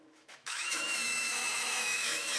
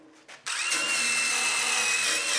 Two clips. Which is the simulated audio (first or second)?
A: first